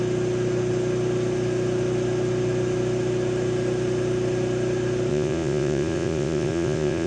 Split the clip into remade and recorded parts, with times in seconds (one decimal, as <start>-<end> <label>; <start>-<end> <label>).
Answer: 0.0-5.1 recorded; 5.1-7.1 remade